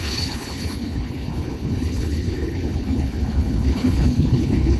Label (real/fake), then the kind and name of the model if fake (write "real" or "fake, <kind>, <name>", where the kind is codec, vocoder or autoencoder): fake, codec, HILCodec